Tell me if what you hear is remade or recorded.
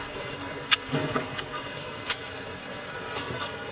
remade